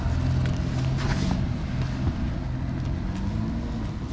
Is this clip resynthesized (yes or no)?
no